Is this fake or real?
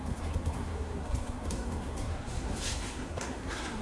fake